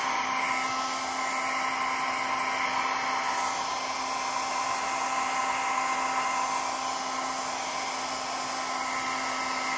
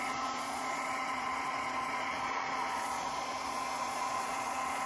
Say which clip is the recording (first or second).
first